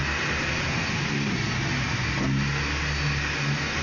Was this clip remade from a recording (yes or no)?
no